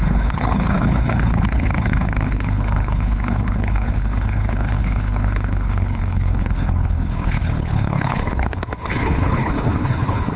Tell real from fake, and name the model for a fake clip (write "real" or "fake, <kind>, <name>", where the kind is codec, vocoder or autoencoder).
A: fake, codec, HILCodec